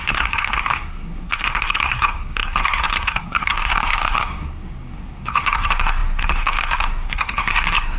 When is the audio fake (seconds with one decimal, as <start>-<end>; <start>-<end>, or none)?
0.0-8.0